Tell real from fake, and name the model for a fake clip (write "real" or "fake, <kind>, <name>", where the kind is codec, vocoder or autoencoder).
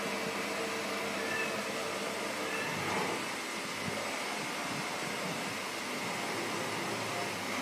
real